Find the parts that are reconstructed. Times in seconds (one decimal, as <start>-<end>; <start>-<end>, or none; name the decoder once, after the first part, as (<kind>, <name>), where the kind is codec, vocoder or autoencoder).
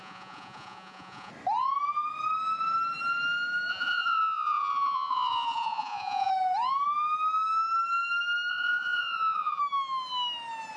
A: 0.0-1.3 (vocoder, Vocos); 3.7-6.3; 8.5-9.6